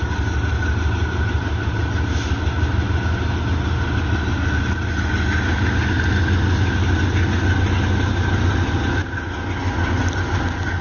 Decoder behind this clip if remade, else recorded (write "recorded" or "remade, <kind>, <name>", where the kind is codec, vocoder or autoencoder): recorded